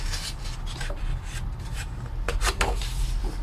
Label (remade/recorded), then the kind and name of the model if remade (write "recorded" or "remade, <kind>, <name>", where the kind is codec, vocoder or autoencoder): recorded